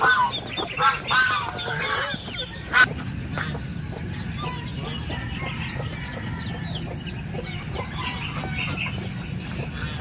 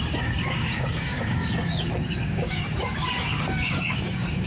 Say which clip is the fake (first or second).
second